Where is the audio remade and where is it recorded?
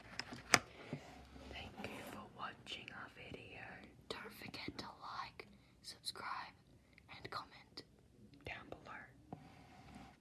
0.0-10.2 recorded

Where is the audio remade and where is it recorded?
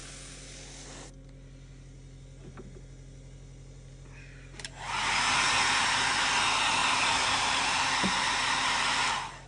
0.0-6.8 recorded; 6.8-7.9 remade; 7.9-9.5 recorded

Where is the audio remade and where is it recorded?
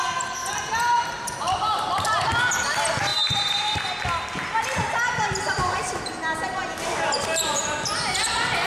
0.0-0.4 recorded; 0.4-2.2 remade; 2.2-3.1 recorded; 3.1-3.8 remade; 3.8-8.7 recorded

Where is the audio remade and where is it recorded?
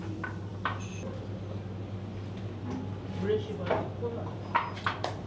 0.0-5.3 recorded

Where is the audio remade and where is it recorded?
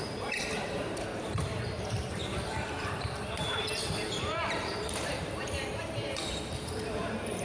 0.0-7.4 remade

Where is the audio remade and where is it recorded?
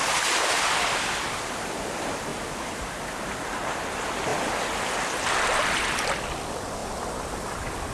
0.0-2.3 recorded; 2.3-2.8 remade; 2.8-4.3 recorded; 4.3-5.4 remade; 5.4-6.8 recorded; 6.8-7.9 remade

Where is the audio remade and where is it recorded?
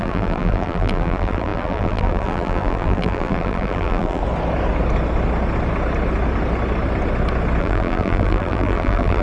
0.0-4.2 remade; 4.2-7.6 recorded; 7.6-9.2 remade